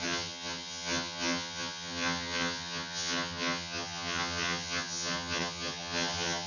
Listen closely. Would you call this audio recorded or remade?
remade